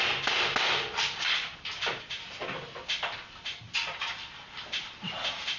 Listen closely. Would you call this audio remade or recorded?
recorded